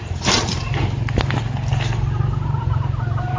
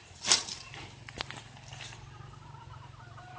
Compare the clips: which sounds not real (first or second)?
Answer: second